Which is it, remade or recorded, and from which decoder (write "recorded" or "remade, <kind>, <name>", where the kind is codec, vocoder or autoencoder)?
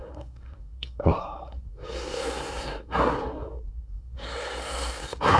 remade, codec, SNAC